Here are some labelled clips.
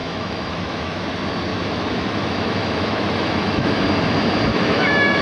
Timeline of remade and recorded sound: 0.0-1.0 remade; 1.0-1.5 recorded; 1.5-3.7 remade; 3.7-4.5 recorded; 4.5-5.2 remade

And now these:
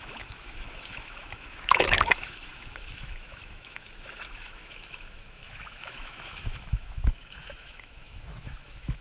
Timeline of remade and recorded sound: 0.0-9.0 remade

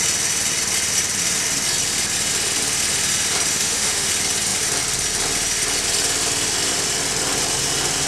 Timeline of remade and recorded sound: 0.0-3.5 recorded; 3.5-4.1 remade; 4.1-8.1 recorded

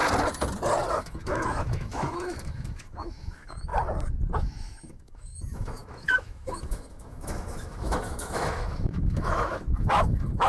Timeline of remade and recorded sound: 0.0-0.9 recorded; 0.9-3.7 remade; 3.7-4.3 recorded; 4.3-10.5 remade

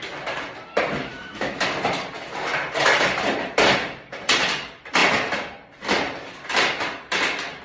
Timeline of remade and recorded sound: 0.0-1.1 recorded; 1.1-1.6 remade; 1.6-7.6 recorded

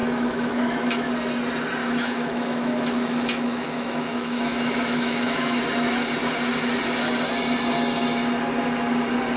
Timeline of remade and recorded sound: 0.0-1.1 remade; 1.1-1.8 recorded; 1.8-5.6 remade; 5.6-9.4 recorded

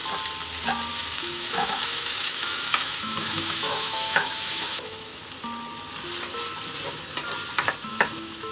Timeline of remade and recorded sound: 0.0-0.9 recorded; 0.9-5.2 remade; 5.2-7.9 recorded; 7.9-8.5 remade